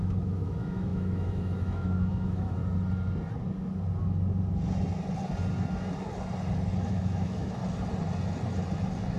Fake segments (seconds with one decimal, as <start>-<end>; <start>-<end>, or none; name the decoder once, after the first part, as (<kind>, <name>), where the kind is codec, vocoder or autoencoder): 0.0-2.6 (autoencoder, DAC-VAE); 6.9-7.6